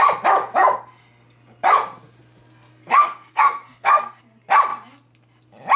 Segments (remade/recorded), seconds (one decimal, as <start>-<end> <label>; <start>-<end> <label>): 0.0-2.7 recorded; 2.7-4.2 remade; 4.2-5.8 recorded